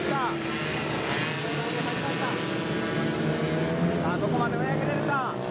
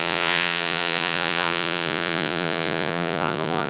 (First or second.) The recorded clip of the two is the first